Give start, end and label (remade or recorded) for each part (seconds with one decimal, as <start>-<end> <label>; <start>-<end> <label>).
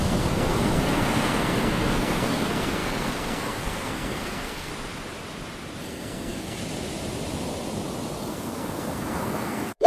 0.0-4.7 remade; 4.7-5.8 recorded; 5.8-6.6 remade; 6.6-8.2 recorded; 8.2-9.9 remade